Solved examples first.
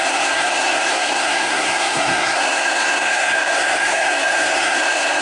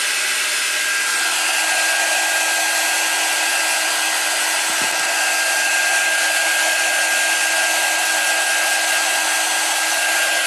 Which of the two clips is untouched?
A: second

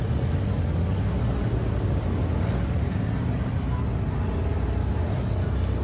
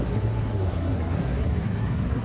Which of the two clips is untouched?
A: first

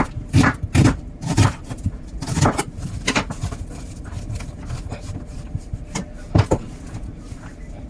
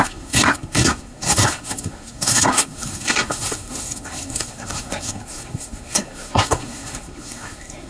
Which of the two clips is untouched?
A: first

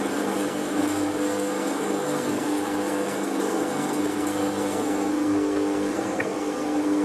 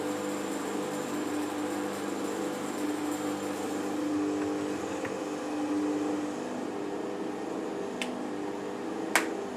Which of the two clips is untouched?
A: second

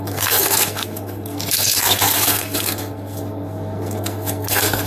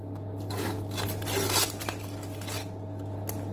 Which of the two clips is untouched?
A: second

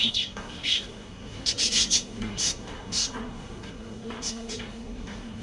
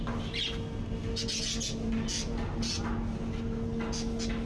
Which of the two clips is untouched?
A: second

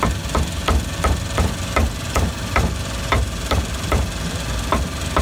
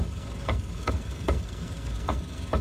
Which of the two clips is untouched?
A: first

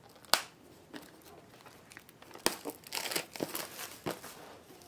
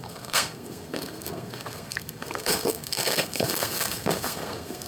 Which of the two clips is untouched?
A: first